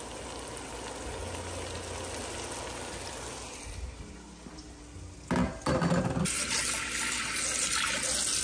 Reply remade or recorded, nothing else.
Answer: recorded